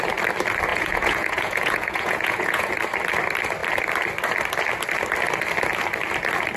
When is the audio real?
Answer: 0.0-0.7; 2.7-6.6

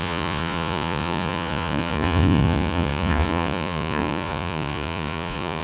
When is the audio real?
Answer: none

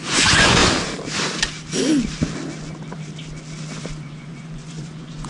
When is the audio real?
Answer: 0.6-3.8

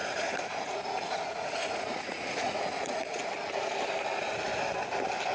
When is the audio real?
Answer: 3.2-5.3

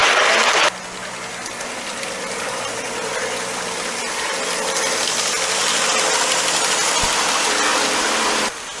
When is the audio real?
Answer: 0.0-8.8

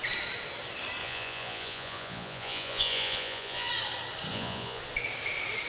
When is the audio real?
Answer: 0.0-1.0; 3.7-4.3; 4.8-5.7

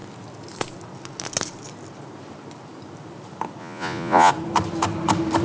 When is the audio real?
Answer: 0.0-3.6; 4.3-5.4

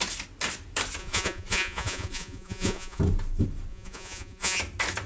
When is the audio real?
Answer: 0.0-1.0; 3.0-3.7; 4.6-5.1